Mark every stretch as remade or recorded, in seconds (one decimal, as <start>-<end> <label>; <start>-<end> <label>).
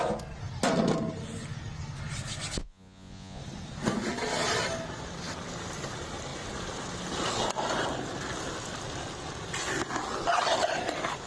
0.0-2.6 recorded; 2.6-3.4 remade; 3.4-11.3 recorded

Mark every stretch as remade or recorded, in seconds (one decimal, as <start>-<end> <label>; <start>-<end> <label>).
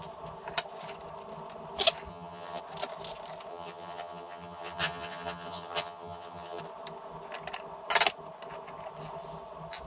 0.0-2.1 recorded; 2.1-2.6 remade; 2.6-3.5 recorded; 3.5-6.6 remade; 6.6-9.9 recorded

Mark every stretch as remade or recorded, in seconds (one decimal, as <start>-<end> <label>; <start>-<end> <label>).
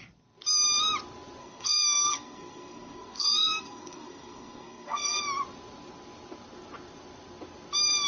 0.0-1.4 recorded; 1.4-5.2 remade; 5.2-8.1 recorded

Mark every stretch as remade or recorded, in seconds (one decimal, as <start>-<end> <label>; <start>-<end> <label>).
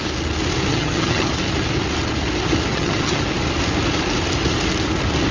0.0-0.7 recorded; 0.7-1.3 remade; 1.3-2.7 recorded; 2.7-3.2 remade; 3.2-5.3 recorded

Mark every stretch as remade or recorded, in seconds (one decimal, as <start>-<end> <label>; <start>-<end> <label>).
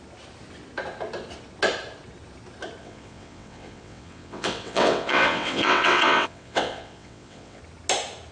0.0-2.8 recorded; 2.8-7.6 remade; 7.6-8.3 recorded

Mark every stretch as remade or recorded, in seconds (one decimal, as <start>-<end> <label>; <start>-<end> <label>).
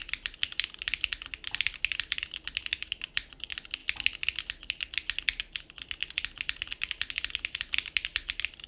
0.0-8.7 recorded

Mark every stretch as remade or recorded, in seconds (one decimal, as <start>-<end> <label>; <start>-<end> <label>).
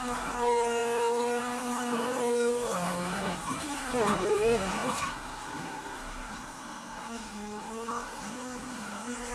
0.0-9.3 remade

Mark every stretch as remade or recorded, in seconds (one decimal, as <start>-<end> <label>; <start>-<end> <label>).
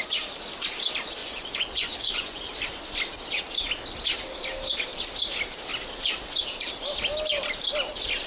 0.0-1.2 recorded; 1.2-2.4 remade; 2.4-8.3 recorded